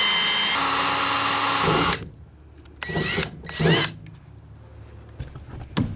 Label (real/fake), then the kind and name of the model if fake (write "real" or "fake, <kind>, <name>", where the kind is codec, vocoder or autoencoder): real